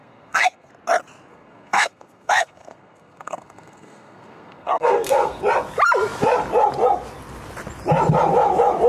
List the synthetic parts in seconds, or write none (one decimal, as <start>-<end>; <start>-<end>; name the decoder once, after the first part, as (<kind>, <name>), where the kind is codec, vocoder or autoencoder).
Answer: 0.0-0.7 (codec, SNAC); 1.3-5.4